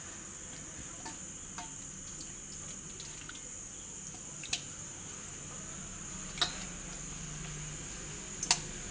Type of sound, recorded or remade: recorded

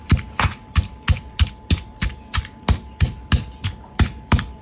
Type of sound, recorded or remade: recorded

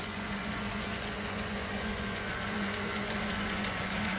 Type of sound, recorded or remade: remade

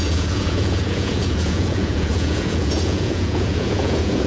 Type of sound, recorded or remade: remade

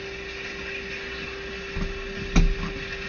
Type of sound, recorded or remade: recorded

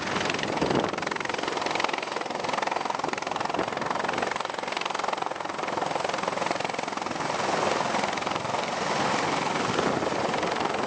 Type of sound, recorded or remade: recorded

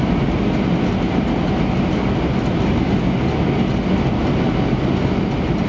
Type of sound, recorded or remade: recorded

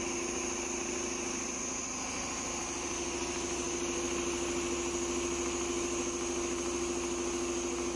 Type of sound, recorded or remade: recorded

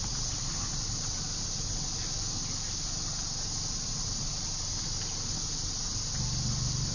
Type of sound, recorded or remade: recorded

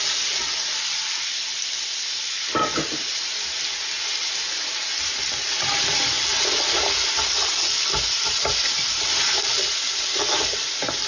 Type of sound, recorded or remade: recorded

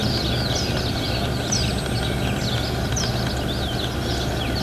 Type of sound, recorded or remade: recorded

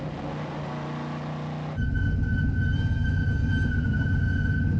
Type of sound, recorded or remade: recorded